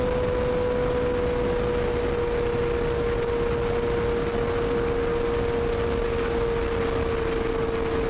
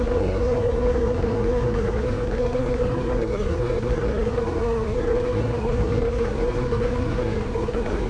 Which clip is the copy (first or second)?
second